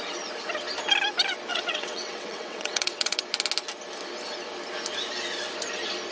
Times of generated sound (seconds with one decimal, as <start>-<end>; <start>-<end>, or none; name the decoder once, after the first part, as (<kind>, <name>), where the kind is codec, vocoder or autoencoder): 1.5-3.2 (vocoder, WaveNeXt)